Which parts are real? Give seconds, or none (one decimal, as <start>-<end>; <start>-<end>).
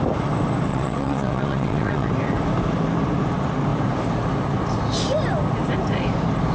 0.0-0.7; 2.1-6.5